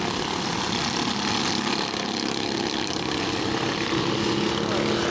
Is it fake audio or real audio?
real